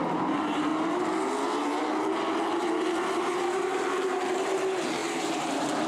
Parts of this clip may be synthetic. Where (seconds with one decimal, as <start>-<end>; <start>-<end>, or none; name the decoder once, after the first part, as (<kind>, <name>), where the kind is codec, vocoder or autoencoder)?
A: 0.0-0.7 (vocoder, BigVGAN v2); 3.2-3.7; 4.4-5.9